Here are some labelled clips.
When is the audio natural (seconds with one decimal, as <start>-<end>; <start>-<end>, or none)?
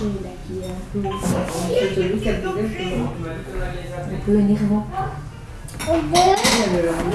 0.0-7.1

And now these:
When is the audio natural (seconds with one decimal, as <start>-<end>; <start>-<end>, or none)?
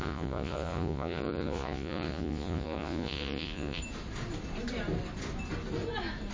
3.8-6.3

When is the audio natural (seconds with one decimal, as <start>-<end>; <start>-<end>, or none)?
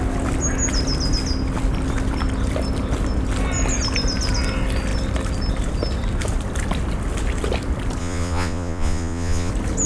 0.0-8.0; 9.5-9.9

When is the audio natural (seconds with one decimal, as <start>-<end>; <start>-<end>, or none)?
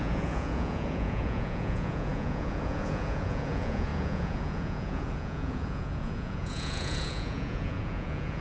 none